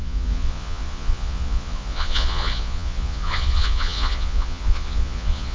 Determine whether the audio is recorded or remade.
remade